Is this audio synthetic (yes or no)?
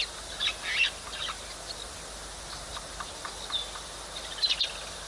no